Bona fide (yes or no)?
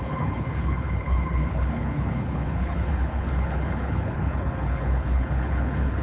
no